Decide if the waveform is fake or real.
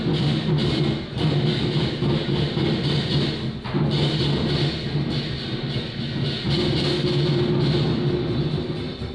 real